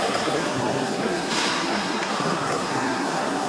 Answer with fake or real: fake